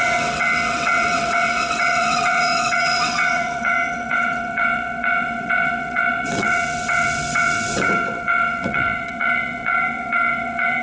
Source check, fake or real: fake